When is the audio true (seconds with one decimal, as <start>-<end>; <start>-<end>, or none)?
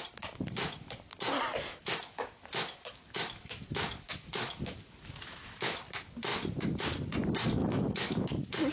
0.0-1.7; 5.8-7.6